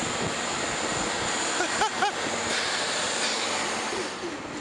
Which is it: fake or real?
real